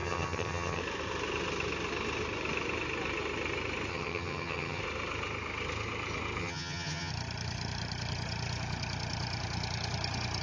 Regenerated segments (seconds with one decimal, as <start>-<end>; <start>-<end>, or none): 0.0-0.8; 3.9-4.8; 6.4-7.1